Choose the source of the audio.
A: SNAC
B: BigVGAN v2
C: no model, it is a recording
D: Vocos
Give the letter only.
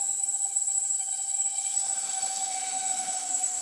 A